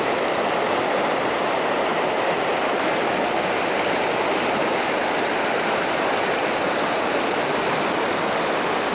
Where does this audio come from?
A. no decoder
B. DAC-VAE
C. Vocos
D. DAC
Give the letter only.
A